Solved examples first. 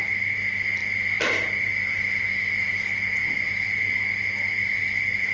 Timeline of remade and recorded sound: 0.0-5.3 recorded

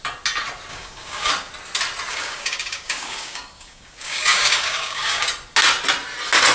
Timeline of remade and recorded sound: 0.0-0.7 recorded; 0.7-1.3 remade; 1.3-2.1 recorded; 2.1-5.3 remade; 5.3-6.5 recorded